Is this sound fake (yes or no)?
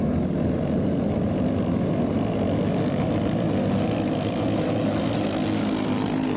no